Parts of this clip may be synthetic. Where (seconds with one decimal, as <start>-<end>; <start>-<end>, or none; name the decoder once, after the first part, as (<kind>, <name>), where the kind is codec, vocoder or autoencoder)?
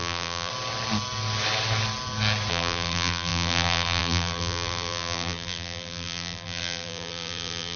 0.0-0.5 (vocoder, BigVGAN v2); 2.5-7.8